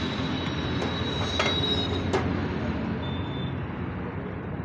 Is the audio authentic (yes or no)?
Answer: yes